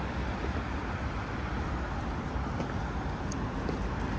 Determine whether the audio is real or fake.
real